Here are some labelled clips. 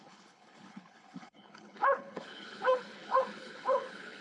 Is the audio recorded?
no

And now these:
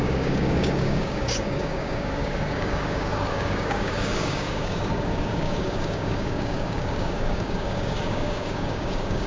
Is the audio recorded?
no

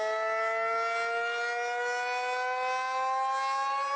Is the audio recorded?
yes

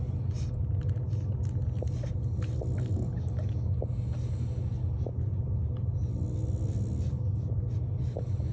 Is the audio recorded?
yes